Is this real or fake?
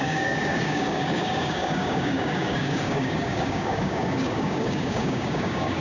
fake